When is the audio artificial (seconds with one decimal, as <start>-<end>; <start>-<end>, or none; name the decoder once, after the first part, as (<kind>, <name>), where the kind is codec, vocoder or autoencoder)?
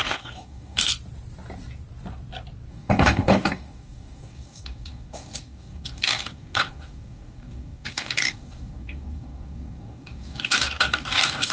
0.0-0.9 (codec, DAC); 2.7-11.5